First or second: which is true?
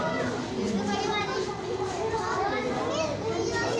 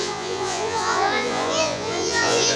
first